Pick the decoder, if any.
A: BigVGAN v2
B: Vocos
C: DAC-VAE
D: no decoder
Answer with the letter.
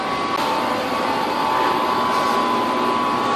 D